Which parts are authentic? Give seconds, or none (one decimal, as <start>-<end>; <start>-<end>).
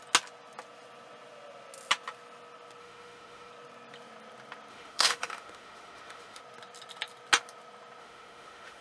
0.0-2.8; 3.5-4.7; 6.4-8.0